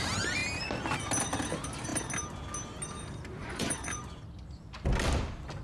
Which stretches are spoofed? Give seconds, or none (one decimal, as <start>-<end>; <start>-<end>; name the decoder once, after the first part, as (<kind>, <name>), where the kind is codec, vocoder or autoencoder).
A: 3.4-4.0 (vocoder, Vocos)